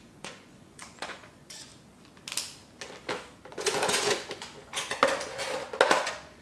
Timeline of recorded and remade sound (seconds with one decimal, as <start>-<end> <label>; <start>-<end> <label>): 0.0-1.7 remade; 1.7-3.5 recorded; 3.5-5.0 remade; 5.0-6.0 recorded; 6.0-6.4 remade